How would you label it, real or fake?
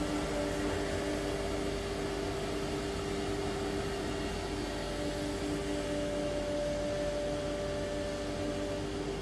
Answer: real